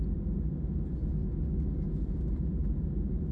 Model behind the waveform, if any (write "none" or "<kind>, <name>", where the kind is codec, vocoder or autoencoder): none